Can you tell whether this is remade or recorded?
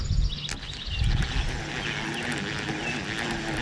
recorded